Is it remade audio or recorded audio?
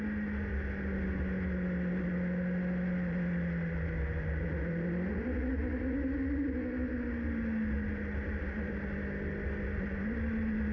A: recorded